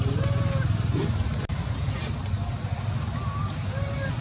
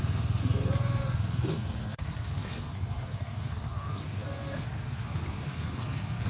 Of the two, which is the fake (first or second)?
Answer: second